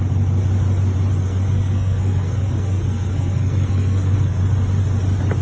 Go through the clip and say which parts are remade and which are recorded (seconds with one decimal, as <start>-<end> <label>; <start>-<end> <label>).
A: 0.0-1.2 recorded; 1.2-4.4 remade; 4.4-5.4 recorded